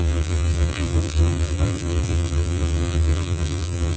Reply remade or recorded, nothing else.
remade